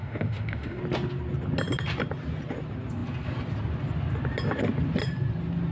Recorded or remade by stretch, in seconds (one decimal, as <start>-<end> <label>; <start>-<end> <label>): 0.0-0.8 remade; 0.8-5.7 recorded